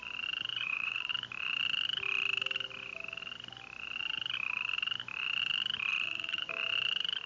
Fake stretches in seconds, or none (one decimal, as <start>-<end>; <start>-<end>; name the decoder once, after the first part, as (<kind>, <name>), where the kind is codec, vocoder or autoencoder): 0.5-1.1 (vocoder, Vocos); 5.9-6.5